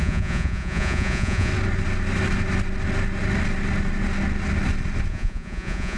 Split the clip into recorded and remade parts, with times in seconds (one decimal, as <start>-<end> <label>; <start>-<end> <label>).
0.0-1.5 remade; 1.5-5.1 recorded; 5.1-6.0 remade